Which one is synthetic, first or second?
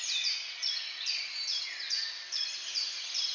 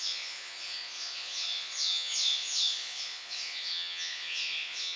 second